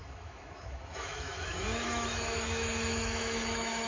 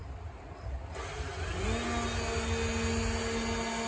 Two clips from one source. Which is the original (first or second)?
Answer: second